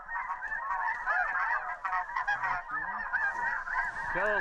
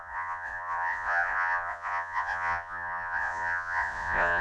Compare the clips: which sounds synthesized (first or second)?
second